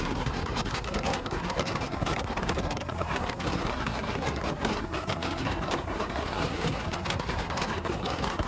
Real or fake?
fake